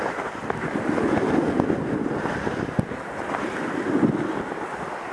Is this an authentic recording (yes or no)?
yes